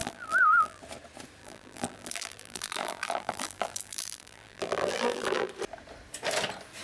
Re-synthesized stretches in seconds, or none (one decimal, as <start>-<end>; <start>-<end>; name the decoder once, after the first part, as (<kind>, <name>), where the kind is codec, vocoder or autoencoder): 0.0-0.8 (vocoder, BigVGAN v2); 1.4-5.5